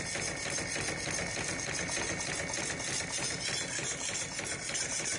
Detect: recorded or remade recorded